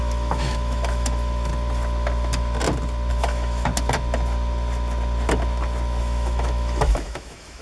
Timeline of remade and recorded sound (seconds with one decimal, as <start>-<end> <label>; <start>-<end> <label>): 0.0-1.5 remade; 1.5-3.1 recorded; 3.1-3.7 remade; 3.7-6.0 recorded; 6.0-7.6 remade